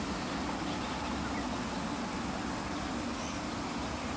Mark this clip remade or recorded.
recorded